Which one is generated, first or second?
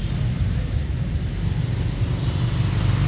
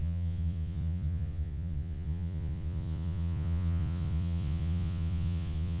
second